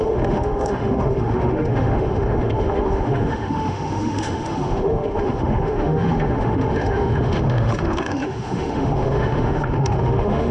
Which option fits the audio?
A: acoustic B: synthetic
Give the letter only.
B